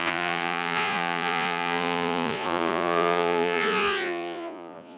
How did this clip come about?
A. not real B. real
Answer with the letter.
A